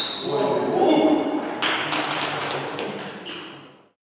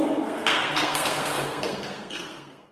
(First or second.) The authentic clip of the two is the first